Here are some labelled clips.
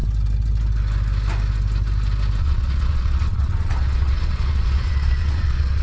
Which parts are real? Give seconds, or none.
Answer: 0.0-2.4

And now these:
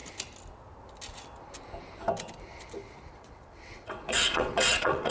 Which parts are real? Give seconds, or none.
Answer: 0.0-3.1

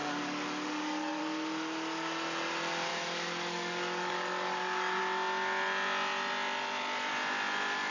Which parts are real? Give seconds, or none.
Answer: 1.2-2.9; 5.0-7.9

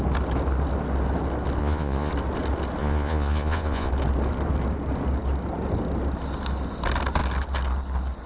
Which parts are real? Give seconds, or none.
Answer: 0.0-1.6; 2.1-2.8; 3.9-8.3

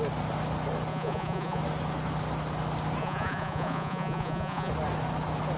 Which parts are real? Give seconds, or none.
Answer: 0.0-0.9; 1.6-3.0; 4.7-5.6

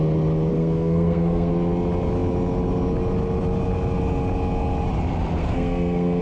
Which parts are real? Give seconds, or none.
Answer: 0.0-0.5; 1.5-5.4

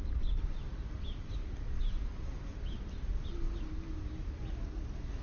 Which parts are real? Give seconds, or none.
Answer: 0.0-5.2

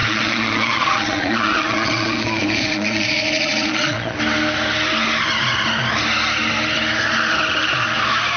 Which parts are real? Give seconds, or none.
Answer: 4.2-8.4